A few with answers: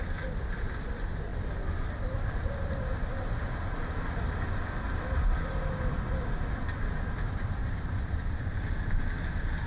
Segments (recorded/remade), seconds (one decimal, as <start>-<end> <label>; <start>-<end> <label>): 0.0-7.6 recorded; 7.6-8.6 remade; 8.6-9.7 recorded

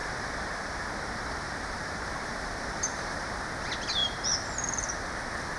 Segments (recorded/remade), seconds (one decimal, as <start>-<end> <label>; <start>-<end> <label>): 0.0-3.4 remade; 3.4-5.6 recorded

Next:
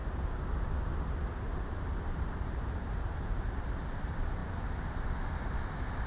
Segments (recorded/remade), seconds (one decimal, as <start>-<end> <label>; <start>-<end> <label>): 0.0-3.7 remade; 3.7-6.1 recorded